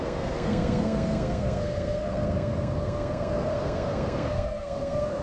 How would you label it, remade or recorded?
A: remade